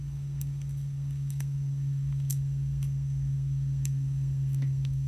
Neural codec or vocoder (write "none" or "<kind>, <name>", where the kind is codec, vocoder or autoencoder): codec, SNAC